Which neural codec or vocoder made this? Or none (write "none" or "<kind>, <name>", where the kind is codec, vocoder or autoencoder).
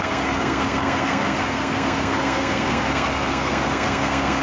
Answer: codec, SNAC